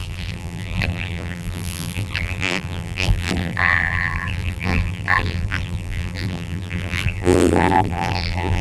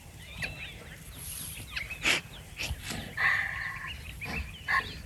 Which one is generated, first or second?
first